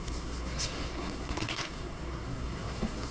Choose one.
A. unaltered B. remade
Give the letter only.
B